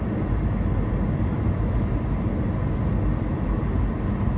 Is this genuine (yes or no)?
yes